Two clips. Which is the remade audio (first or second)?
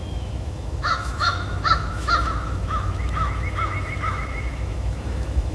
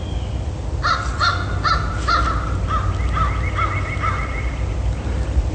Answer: first